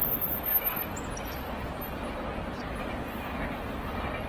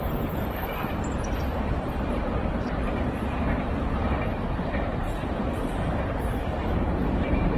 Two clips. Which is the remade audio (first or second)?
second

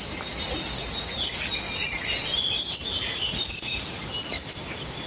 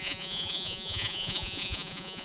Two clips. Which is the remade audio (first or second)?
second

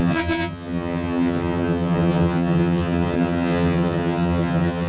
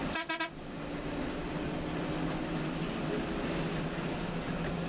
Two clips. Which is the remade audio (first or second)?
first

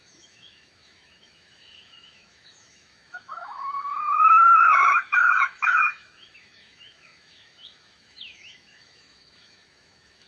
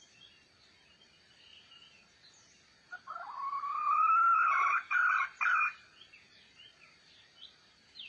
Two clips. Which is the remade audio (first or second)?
first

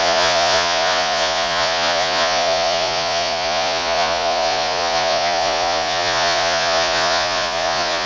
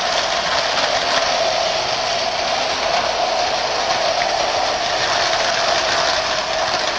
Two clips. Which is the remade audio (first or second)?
first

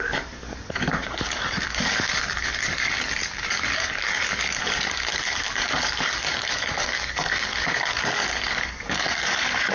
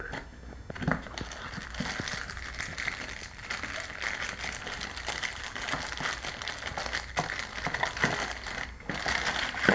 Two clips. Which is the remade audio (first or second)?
first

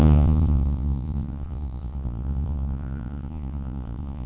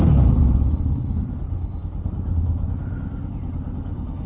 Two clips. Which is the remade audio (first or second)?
first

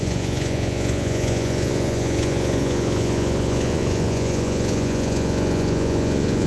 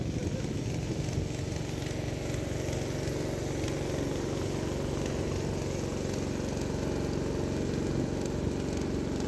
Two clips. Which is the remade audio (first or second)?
first